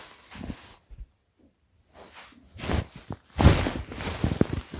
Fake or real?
real